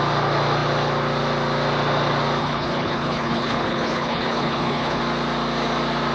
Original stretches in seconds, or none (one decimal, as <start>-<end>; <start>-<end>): 0.0-2.4; 5.0-6.1